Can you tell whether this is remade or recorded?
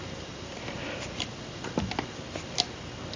recorded